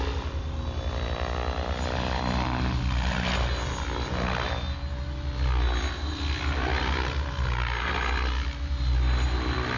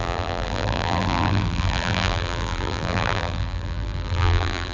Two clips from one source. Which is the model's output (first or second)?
second